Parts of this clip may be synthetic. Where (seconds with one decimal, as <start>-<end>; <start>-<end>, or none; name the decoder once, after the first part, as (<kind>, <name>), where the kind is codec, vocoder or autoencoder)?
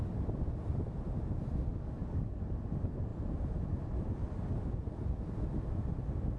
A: 1.7-2.4 (codec, DAC)